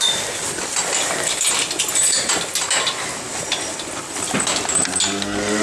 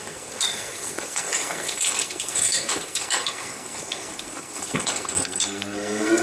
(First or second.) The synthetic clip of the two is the second